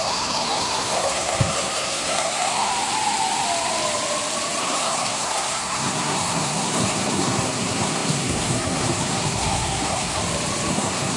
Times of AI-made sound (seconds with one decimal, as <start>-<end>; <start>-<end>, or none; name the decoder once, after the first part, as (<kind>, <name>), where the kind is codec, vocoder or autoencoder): 0.0-2.7 (codec, SNAC); 4.6-10.2; 10.7-11.2